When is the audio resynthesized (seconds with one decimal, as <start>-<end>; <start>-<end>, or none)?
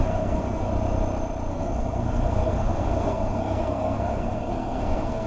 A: 0.0-0.7; 1.5-5.3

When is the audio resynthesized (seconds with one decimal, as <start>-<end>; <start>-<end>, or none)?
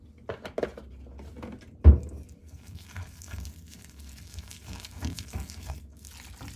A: 2.4-6.1